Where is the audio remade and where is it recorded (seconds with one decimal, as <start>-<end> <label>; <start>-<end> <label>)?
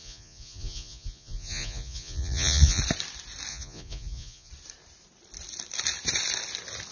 0.0-2.8 remade; 2.8-3.5 recorded; 3.5-4.5 remade; 4.5-6.9 recorded